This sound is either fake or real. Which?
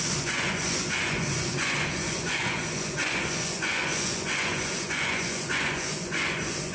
fake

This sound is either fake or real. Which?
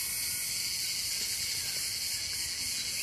real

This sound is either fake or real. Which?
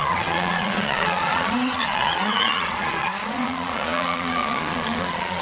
fake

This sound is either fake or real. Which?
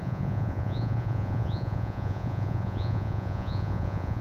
fake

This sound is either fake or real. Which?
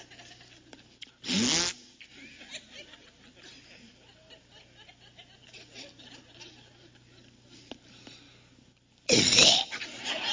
real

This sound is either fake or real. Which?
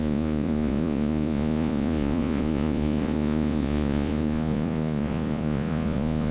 fake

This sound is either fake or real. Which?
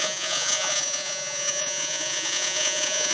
fake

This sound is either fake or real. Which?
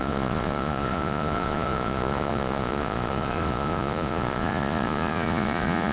fake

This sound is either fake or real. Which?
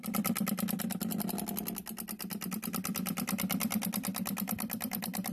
real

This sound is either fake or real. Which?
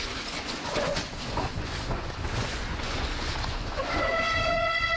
fake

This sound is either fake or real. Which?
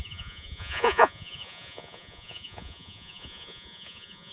fake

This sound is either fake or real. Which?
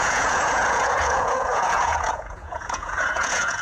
fake